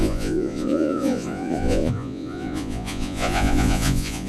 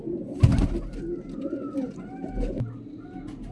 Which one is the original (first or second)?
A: second